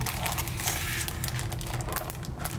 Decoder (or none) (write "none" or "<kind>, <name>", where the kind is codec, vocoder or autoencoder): none